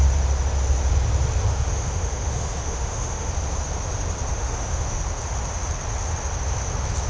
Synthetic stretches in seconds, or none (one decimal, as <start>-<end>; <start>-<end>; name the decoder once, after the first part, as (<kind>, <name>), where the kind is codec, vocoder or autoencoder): 1.5-3.3 (autoencoder, DAC-VAE); 4.3-5.0